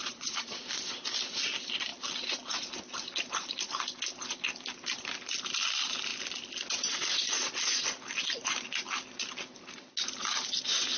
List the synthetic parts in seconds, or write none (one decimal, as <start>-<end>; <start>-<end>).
0.0-0.6